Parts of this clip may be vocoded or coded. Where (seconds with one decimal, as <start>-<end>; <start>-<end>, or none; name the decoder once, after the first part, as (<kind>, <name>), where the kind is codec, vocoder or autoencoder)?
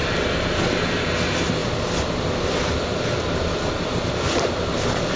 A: 0.0-0.8 (vocoder, BigVGAN v2); 1.6-4.7